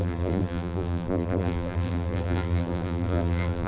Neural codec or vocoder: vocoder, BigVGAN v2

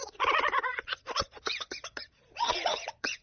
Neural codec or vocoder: vocoder, Vocos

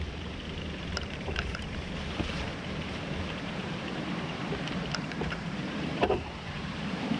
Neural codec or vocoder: vocoder, BigVGAN v2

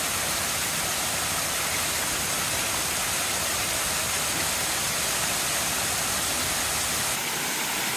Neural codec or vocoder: none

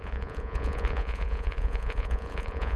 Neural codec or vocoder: vocoder, Vocos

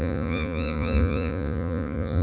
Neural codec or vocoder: vocoder, Vocos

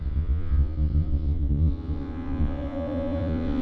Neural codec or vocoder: vocoder, Vocos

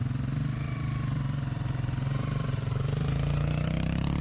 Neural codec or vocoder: vocoder, BigVGAN v2